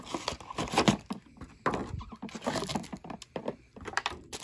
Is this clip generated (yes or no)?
no